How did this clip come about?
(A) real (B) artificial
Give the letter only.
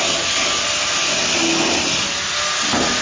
A